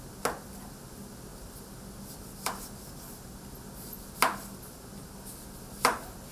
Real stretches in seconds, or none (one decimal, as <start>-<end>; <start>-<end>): 0.0-6.3